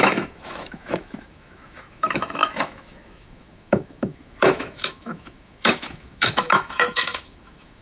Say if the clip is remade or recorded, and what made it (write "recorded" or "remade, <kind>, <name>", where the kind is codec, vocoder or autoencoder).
remade, autoencoder, DAC-VAE